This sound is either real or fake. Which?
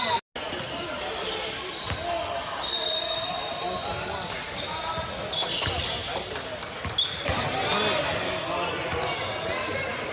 real